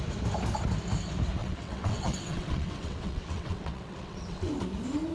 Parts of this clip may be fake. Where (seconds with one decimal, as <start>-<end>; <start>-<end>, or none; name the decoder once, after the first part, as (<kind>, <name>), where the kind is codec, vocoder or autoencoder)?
1.4-4.5 (vocoder, WaveNeXt)